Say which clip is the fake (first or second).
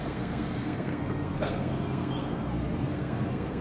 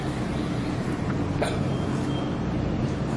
first